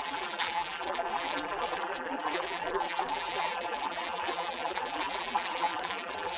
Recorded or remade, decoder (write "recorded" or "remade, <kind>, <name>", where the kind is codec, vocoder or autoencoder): remade, vocoder, BigVGAN v2